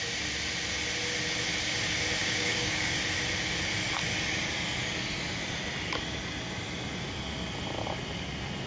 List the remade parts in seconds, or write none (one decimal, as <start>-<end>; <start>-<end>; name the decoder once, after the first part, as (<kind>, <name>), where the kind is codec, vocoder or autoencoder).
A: 2.2-3.0 (codec, DAC)